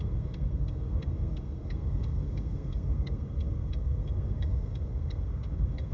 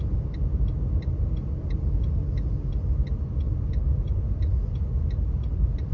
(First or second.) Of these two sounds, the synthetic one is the first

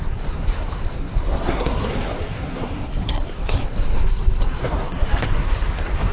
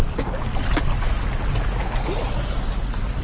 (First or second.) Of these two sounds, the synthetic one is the first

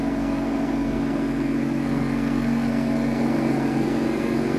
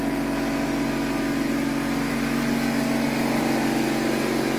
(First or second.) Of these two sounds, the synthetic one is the first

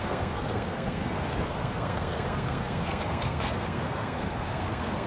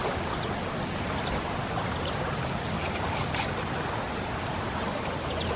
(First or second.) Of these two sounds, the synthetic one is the first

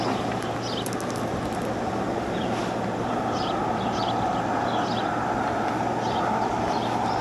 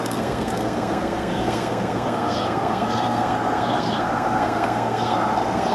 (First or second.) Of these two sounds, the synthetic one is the second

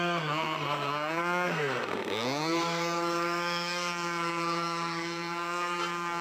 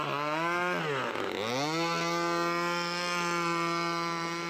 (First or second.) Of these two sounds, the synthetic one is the first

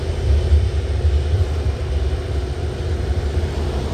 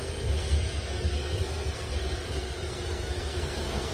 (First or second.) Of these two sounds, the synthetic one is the second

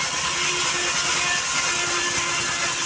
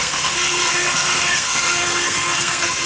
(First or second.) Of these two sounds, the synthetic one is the second